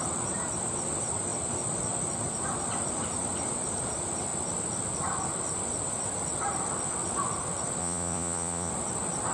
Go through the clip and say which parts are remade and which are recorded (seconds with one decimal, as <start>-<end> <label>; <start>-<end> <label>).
0.0-7.8 recorded; 7.8-8.7 remade; 8.7-9.3 recorded